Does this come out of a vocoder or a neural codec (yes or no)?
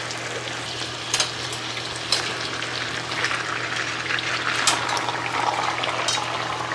no